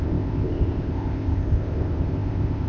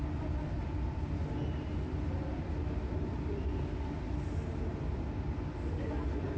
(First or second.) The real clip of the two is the second